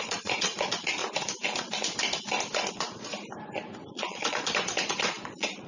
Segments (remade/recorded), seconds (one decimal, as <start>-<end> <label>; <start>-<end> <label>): 0.0-1.0 remade; 1.0-2.7 recorded; 2.7-3.1 remade; 3.1-3.9 recorded; 3.9-5.7 remade